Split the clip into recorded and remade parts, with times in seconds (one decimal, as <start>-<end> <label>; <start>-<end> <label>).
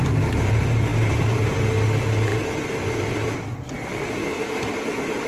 0.0-4.2 recorded; 4.2-4.7 remade; 4.7-5.3 recorded